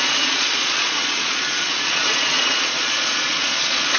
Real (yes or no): no